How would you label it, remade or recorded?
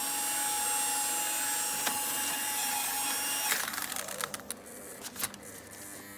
recorded